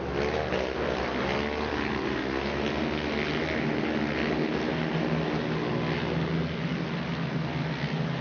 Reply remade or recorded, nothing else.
recorded